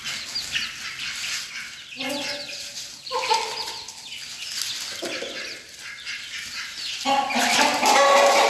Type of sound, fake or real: real